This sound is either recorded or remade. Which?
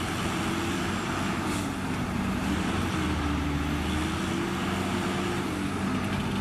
recorded